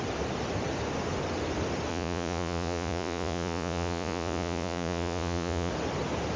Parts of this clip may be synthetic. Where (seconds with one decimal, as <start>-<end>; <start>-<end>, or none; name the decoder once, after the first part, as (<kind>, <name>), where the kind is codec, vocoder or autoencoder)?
1.9-5.7 (vocoder, Vocos)